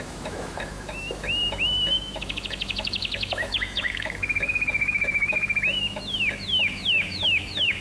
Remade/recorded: remade